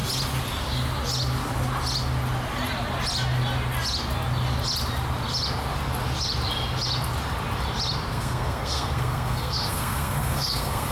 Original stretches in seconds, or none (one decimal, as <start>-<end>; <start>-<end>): 0.0-8.1